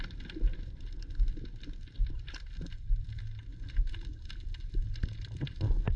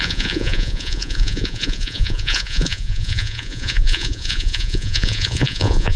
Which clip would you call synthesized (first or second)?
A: second